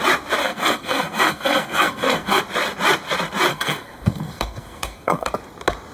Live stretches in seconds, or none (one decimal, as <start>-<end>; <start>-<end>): 0.0-0.4; 2.4-3.5; 5.3-5.9